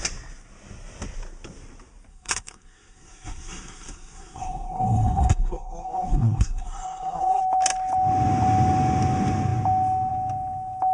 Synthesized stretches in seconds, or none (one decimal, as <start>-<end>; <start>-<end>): 2.1-7.4